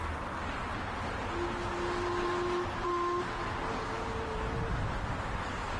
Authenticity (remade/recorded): recorded